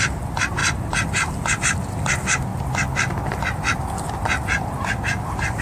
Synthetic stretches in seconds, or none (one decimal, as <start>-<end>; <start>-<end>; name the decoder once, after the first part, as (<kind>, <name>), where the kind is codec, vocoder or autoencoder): none